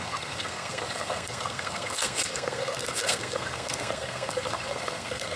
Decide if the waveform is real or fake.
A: fake